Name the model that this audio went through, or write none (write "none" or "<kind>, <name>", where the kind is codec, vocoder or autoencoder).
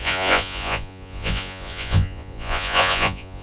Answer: vocoder, Vocos